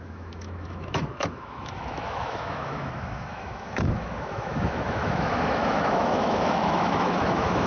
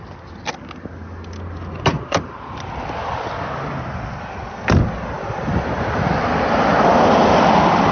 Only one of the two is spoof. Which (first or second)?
first